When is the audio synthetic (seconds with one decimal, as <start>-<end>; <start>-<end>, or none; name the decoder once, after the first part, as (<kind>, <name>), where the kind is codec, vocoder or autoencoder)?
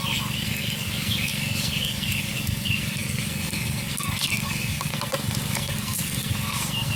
0.0-7.0 (codec, SNAC)